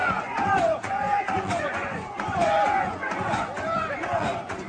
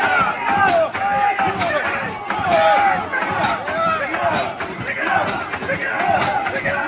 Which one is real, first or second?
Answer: second